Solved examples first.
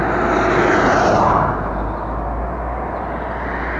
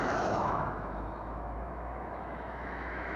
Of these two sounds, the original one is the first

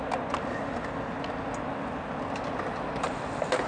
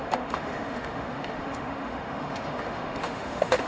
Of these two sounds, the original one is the first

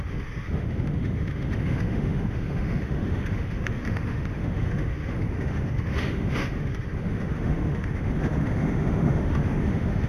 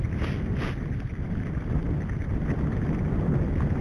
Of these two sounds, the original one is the second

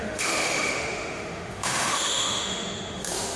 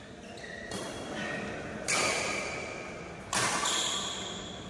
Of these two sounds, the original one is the second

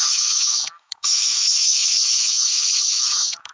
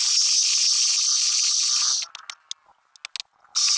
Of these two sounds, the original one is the second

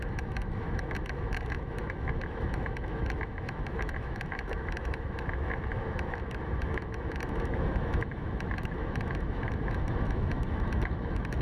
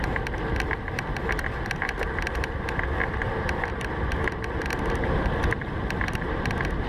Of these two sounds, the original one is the second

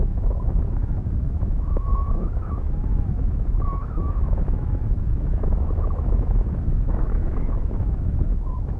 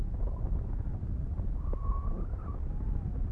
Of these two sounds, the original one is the second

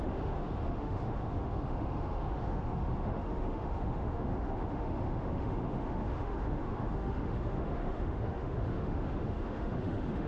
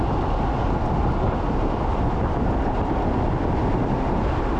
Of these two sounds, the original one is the second